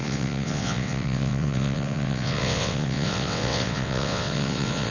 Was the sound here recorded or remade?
remade